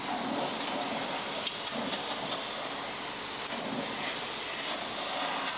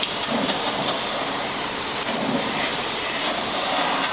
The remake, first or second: second